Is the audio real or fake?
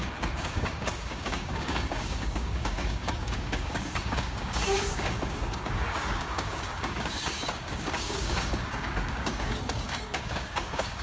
fake